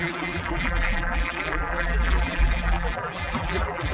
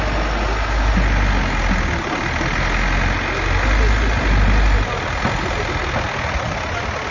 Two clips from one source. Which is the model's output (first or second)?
first